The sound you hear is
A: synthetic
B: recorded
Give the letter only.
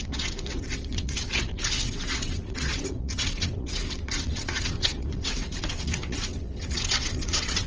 A